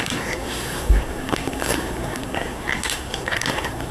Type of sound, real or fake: fake